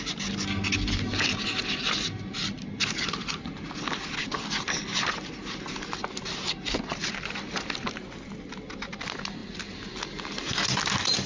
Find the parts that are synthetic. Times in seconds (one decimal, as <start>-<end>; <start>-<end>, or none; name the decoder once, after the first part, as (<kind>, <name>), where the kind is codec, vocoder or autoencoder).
none